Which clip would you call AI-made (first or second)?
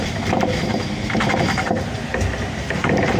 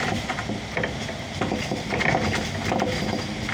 first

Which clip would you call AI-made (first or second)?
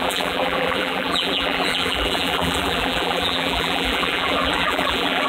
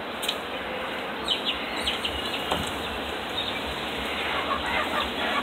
first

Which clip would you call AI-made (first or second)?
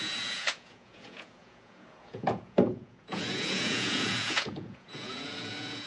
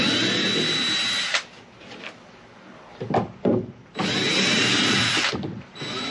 first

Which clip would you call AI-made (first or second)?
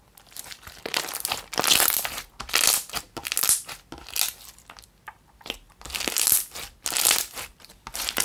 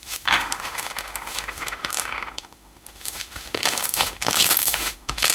second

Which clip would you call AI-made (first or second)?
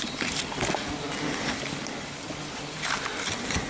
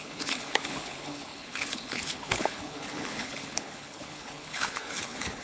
second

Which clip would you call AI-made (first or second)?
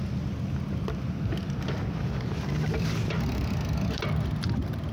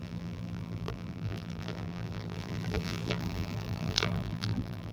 second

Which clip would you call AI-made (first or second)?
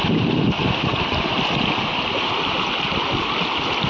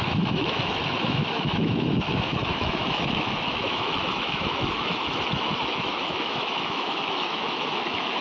second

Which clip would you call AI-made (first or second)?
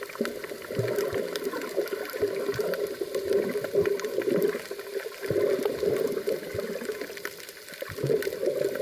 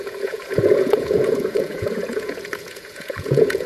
second